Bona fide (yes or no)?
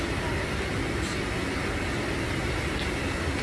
yes